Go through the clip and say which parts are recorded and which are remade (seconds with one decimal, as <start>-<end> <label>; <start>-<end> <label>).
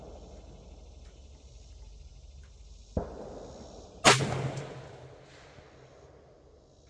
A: 0.0-6.9 recorded